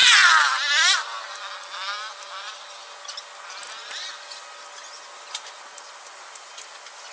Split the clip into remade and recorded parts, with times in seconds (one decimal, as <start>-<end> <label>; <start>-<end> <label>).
0.0-7.1 recorded